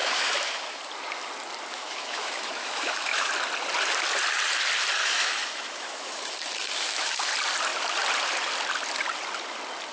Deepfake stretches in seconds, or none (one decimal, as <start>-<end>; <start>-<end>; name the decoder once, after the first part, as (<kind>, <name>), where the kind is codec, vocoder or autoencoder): 0.0-0.8 (autoencoder, DAC-VAE); 1.7-3.3; 5.0-7.3